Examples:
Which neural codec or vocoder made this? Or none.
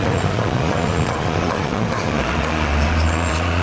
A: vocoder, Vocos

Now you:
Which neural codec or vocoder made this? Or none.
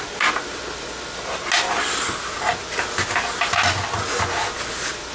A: none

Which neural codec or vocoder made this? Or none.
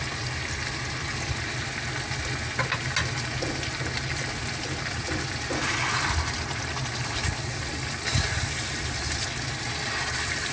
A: none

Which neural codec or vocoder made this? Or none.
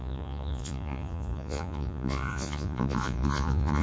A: vocoder, Vocos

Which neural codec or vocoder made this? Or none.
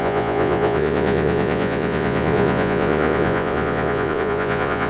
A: vocoder, Vocos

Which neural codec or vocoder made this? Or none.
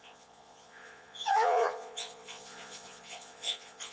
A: vocoder, Vocos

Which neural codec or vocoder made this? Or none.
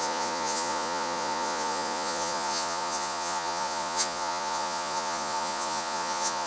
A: vocoder, Vocos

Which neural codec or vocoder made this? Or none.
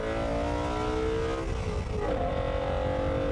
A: none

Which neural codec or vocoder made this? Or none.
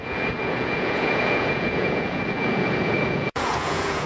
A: vocoder, Vocos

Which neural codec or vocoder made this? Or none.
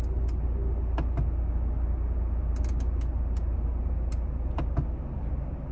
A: none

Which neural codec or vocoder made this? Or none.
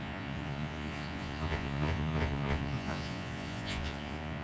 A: vocoder, Vocos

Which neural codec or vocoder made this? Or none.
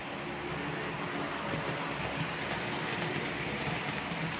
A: none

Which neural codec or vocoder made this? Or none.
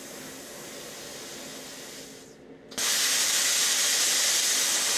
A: none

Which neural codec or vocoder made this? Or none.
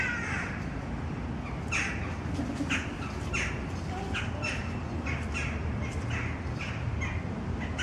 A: none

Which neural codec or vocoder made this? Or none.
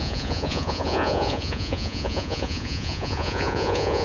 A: vocoder, Vocos